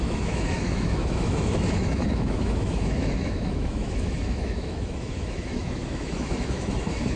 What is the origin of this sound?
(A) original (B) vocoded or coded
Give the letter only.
B